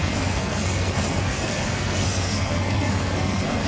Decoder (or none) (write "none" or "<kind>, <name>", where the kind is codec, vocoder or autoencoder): codec, SNAC